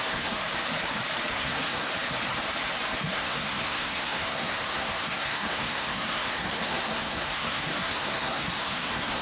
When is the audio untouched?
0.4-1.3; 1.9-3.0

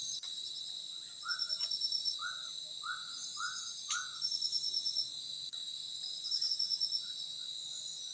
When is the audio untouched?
2.0-2.7; 3.2-4.3; 5.8-6.5

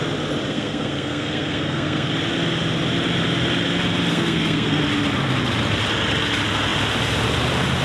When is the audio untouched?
0.0-0.5; 2.1-4.1; 4.8-7.8

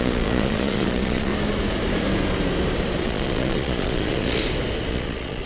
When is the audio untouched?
1.3-3.0; 4.4-4.9